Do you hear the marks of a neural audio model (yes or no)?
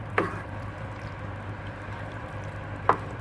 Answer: no